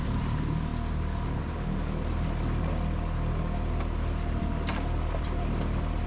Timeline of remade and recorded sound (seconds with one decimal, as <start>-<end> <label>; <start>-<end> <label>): 0.0-0.7 remade; 0.7-4.4 recorded; 4.4-6.1 remade